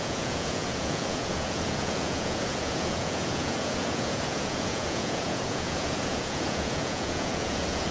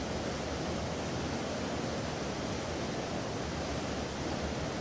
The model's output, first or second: first